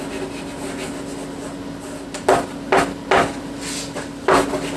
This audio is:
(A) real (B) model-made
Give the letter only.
A